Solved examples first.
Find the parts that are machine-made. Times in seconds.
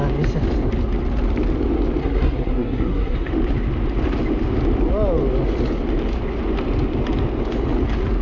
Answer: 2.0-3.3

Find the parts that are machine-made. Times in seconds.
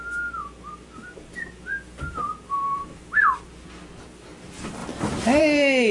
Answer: none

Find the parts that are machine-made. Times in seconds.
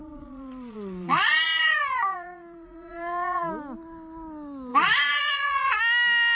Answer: 0.0-3.5; 4.7-5.8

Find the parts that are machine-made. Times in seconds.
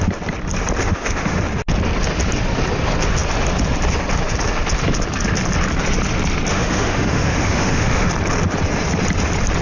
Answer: 0.8-1.4; 6.5-8.1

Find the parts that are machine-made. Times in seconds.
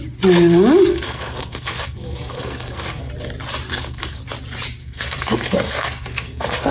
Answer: 0.9-3.1; 3.7-4.2; 4.8-6.7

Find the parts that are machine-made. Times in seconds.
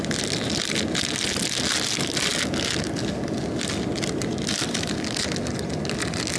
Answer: none